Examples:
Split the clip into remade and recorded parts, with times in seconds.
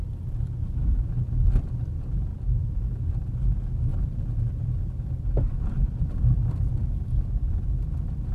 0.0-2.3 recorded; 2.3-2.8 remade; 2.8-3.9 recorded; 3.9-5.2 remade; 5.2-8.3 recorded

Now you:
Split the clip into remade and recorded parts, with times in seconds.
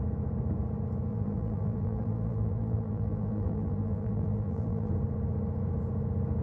0.0-1.1 recorded; 1.1-4.9 remade; 4.9-6.4 recorded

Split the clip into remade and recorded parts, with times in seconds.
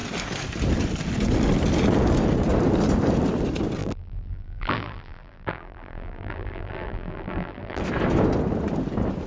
0.0-3.8 recorded; 3.8-7.8 remade; 7.8-9.3 recorded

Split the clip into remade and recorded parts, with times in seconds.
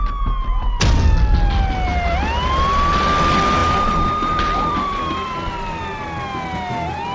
0.0-3.6 recorded; 3.6-5.5 remade; 5.5-7.1 recorded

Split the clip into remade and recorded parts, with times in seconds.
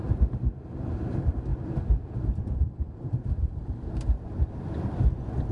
0.0-5.5 remade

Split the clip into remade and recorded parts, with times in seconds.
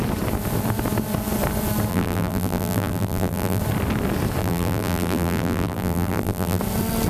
0.0-1.9 recorded; 1.9-3.6 remade; 3.6-4.4 recorded; 4.4-6.6 remade; 6.6-7.1 recorded